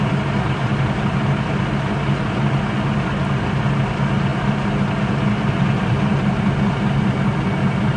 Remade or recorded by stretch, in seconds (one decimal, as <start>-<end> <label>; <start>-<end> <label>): 0.0-8.0 recorded